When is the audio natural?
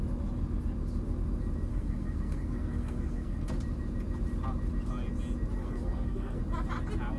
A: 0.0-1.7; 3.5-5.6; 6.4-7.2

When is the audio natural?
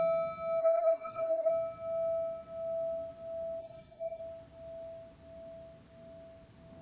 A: 0.0-0.6; 1.5-3.6; 4.2-6.8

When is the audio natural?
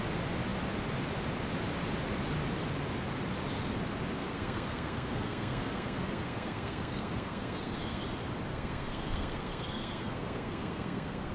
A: 0.0-4.2; 8.0-8.5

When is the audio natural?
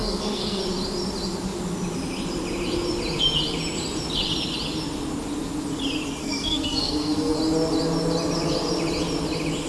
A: 0.6-6.2; 7.4-9.7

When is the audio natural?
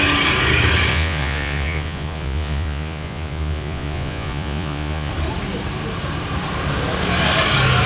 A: 0.0-0.9; 5.1-7.9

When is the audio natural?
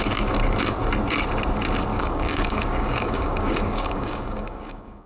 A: 0.0-1.9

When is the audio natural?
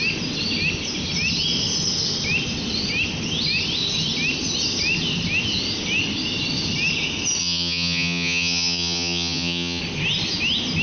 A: 0.0-7.4; 9.8-10.8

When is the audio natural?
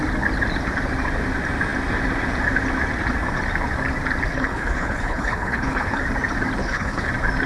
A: 0.0-4.3; 6.0-6.6; 7.1-7.5